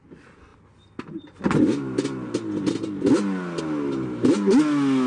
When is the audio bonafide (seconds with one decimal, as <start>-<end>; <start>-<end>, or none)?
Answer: 0.0-5.1